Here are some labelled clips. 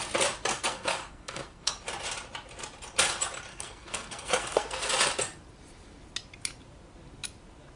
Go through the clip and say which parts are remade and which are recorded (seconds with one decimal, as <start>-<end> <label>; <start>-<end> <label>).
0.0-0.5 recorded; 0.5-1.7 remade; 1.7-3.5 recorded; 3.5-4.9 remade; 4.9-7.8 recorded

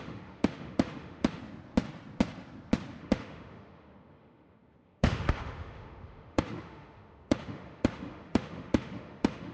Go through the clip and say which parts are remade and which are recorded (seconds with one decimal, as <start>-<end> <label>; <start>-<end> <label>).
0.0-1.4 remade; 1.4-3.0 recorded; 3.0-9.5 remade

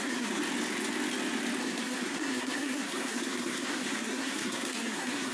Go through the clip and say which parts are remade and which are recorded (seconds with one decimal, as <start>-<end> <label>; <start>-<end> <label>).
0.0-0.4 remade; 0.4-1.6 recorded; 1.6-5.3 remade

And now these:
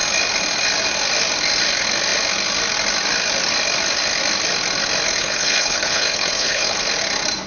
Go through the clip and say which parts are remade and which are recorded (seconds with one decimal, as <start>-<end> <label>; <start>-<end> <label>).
0.0-5.2 recorded; 5.2-6.8 remade; 6.8-7.5 recorded

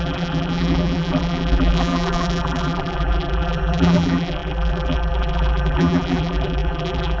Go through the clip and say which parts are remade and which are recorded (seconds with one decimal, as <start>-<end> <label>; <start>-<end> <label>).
0.0-7.2 remade

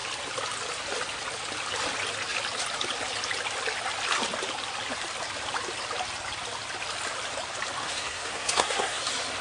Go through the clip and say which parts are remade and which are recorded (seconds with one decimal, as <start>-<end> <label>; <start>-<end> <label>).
0.0-7.8 recorded; 7.8-9.0 remade; 9.0-9.4 recorded

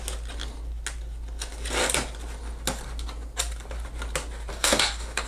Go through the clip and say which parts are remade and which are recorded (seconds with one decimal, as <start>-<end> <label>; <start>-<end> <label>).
0.0-4.5 recorded; 4.5-5.3 remade

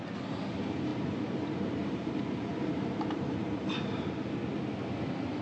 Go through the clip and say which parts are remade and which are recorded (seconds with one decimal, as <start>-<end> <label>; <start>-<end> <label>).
0.0-0.9 recorded; 0.9-4.1 remade; 4.1-5.4 recorded